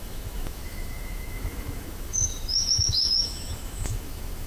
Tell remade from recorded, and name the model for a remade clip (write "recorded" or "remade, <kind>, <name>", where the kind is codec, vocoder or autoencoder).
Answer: remade, autoencoder, DAC-VAE